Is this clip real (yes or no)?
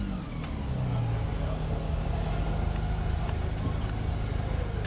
yes